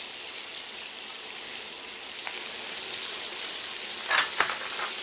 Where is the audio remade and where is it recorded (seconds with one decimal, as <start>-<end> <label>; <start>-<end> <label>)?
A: 0.0-5.0 recorded